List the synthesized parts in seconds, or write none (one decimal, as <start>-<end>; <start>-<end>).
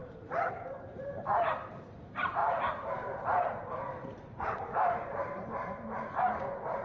0.0-1.5; 2.4-6.3